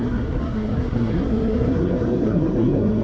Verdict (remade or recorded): remade